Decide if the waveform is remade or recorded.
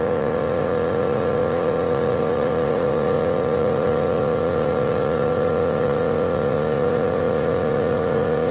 remade